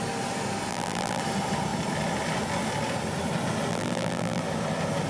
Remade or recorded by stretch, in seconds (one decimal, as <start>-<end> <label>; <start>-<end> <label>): 0.0-0.7 recorded; 0.7-1.2 remade; 1.2-3.7 recorded; 3.7-4.4 remade; 4.4-5.1 recorded